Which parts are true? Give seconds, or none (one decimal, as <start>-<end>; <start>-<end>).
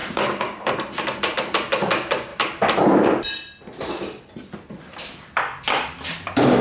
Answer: 0.7-6.6